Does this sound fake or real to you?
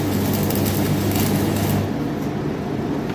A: real